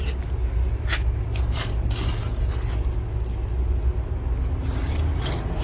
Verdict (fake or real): real